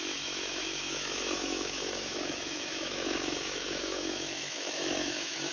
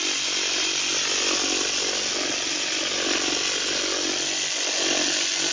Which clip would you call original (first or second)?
second